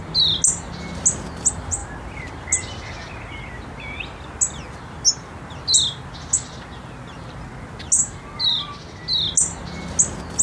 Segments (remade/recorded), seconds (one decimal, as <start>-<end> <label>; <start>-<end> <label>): 0.0-10.4 recorded